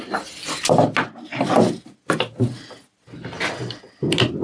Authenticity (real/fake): real